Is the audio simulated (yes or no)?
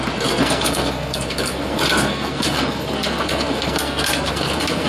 yes